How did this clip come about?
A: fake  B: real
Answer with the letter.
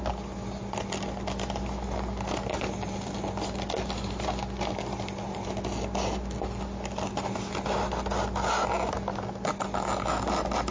B